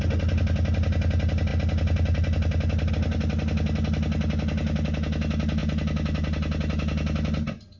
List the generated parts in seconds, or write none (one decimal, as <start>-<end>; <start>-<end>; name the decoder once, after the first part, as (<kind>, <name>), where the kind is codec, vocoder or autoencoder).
none